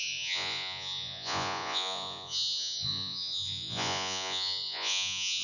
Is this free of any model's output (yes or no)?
no